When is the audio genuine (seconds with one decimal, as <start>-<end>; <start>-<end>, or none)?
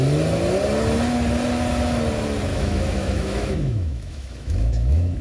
0.0-2.5